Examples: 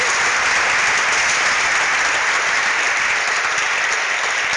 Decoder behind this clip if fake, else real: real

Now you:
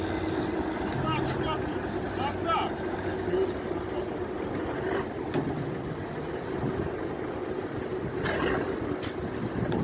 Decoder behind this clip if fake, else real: real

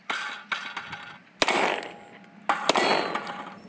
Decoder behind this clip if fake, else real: real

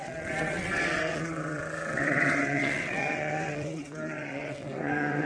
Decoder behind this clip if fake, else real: fake, vocoder, WaveNeXt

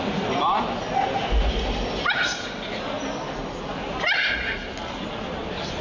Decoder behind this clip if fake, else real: real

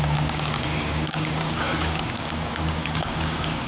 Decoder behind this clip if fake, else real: fake, codec, DAC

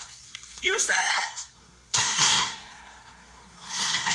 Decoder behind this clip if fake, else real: fake, codec, SNAC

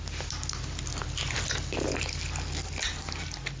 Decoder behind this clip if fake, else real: real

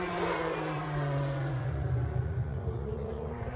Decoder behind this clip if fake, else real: fake, vocoder, Vocos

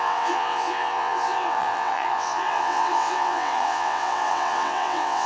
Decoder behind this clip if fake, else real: fake, vocoder, WaveNeXt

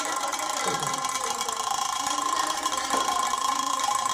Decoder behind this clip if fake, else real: fake, vocoder, BigVGAN v2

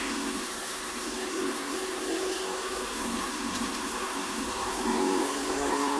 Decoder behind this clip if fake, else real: fake, codec, SNAC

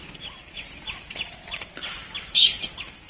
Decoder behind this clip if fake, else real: real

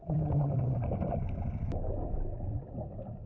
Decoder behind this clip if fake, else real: fake, vocoder, BigVGAN v2